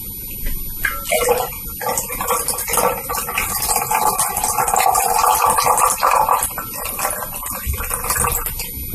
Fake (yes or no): no